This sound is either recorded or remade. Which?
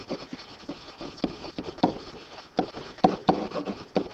recorded